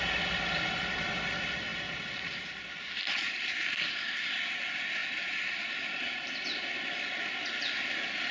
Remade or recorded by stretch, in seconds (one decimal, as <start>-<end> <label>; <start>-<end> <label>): 0.0-5.0 recorded; 5.0-6.3 remade; 6.3-8.3 recorded